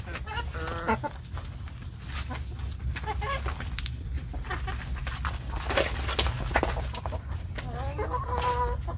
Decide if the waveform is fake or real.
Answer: real